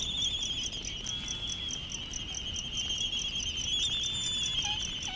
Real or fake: real